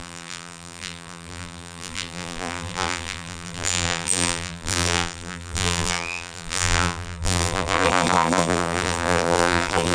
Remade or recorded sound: remade